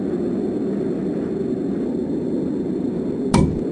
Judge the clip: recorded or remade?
recorded